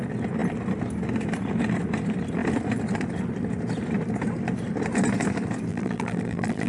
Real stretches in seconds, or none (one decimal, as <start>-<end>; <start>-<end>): 0.0-5.7

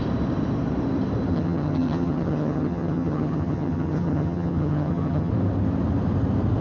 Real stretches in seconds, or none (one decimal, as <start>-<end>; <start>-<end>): 0.0-1.3; 5.3-6.6

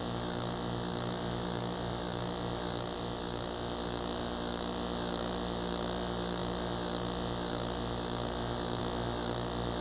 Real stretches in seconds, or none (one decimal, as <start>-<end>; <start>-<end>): 0.0-9.8

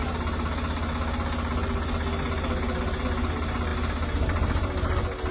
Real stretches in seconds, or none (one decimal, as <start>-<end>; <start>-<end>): 0.0-5.3

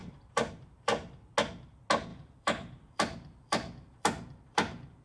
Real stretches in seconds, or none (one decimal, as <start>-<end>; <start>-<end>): 1.3-2.1

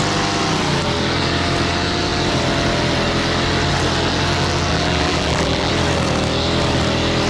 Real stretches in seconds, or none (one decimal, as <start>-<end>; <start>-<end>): 0.0-4.7; 5.7-7.3

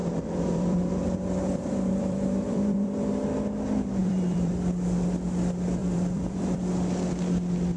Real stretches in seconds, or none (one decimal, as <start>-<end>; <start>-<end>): 3.1-4.0; 4.5-5.8; 6.6-7.8

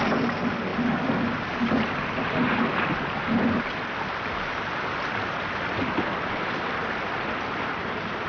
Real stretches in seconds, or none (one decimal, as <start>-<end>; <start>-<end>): 0.0-8.3